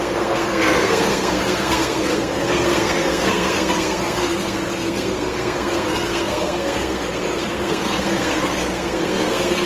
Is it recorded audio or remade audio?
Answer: remade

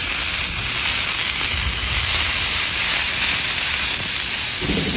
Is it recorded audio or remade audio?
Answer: remade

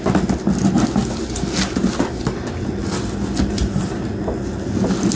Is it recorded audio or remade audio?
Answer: recorded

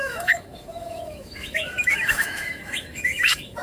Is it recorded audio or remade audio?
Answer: remade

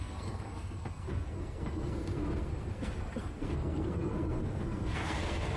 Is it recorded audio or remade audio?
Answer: remade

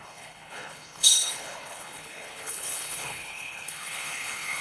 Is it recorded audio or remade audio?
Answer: remade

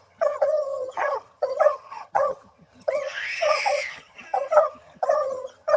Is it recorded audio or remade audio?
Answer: remade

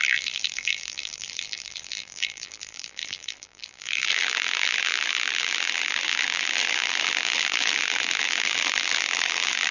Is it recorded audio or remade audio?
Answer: remade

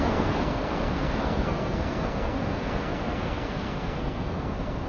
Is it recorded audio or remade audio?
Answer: remade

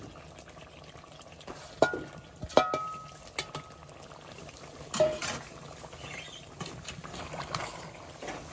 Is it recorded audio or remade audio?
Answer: recorded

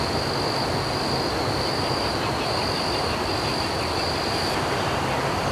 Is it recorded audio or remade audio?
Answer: recorded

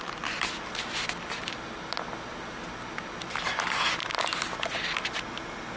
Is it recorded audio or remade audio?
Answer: recorded